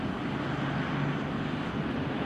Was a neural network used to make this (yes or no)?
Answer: no